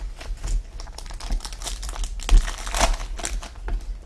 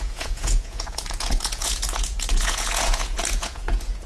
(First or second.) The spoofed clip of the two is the second